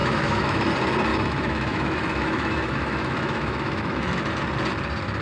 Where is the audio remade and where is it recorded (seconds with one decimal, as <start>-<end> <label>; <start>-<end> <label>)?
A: 0.0-0.7 remade; 0.7-1.1 recorded; 1.1-4.2 remade; 4.2-5.2 recorded